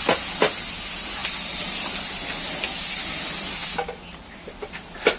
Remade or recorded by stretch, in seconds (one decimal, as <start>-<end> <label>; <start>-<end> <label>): 0.0-5.2 recorded

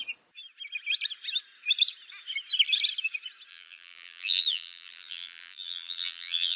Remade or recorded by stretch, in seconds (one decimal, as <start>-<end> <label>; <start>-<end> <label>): 0.0-3.5 recorded; 3.5-6.6 remade

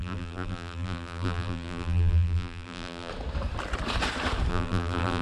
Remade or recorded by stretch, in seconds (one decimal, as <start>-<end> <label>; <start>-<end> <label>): 0.0-3.1 remade; 3.1-4.5 recorded; 4.5-5.2 remade

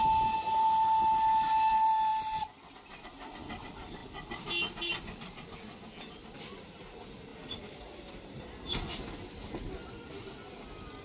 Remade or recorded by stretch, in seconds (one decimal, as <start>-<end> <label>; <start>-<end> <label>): 0.0-7.3 recorded; 7.3-8.4 remade; 8.4-11.0 recorded

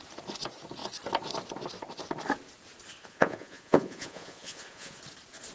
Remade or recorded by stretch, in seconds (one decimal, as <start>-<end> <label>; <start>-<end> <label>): 0.0-3.0 recorded; 3.0-5.0 remade; 5.0-5.5 recorded

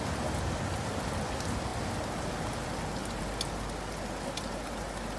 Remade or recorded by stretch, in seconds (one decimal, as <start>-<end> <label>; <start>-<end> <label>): 0.0-5.2 recorded

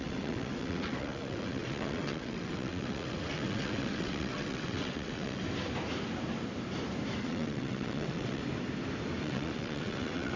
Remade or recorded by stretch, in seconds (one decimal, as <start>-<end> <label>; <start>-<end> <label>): 0.0-5.4 remade; 5.4-7.2 recorded; 7.2-8.4 remade; 8.4-9.2 recorded; 9.2-10.4 remade